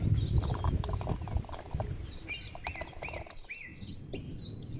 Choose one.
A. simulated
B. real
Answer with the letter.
B